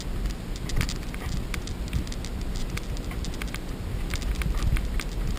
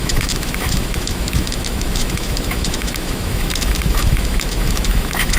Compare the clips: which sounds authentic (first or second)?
first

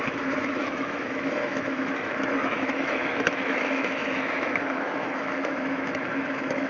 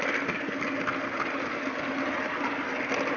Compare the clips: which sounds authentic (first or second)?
second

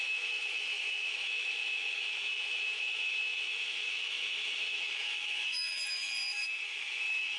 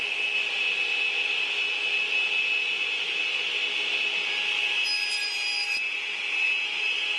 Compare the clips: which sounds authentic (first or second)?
second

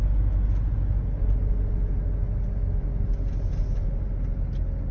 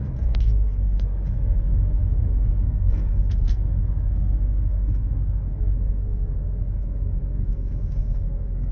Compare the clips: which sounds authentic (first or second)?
first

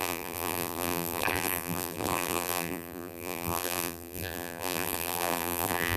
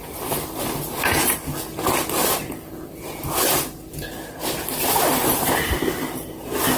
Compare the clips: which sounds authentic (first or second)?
second